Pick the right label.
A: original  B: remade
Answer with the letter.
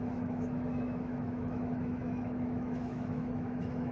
B